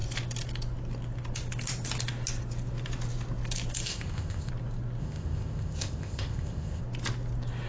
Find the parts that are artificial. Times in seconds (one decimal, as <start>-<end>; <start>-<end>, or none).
3.9-4.5; 5.0-6.8